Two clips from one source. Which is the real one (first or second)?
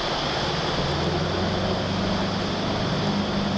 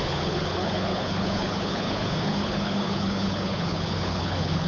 first